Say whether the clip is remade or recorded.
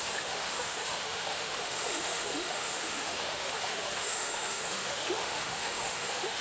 remade